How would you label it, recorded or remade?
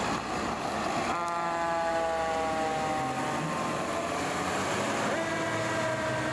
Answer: recorded